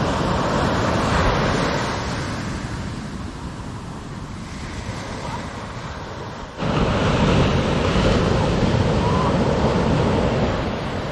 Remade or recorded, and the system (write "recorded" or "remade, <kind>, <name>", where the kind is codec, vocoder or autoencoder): recorded